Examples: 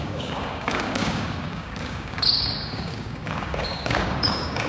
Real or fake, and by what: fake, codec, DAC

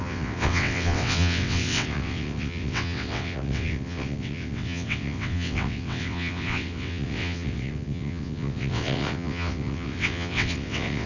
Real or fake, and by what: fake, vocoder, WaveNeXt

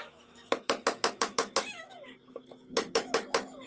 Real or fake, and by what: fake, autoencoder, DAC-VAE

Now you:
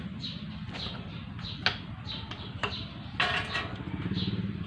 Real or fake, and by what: real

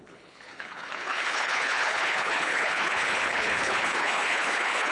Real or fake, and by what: fake, codec, HILCodec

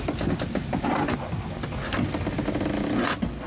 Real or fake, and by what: real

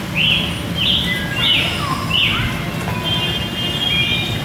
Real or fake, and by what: real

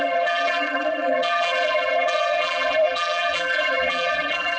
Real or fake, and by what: fake, vocoder, BigVGAN v2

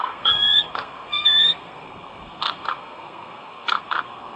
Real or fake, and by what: fake, codec, SNAC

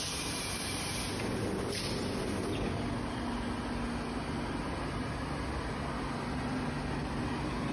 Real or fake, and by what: real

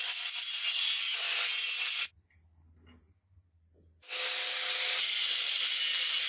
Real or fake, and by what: real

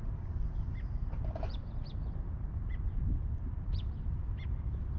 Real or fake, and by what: real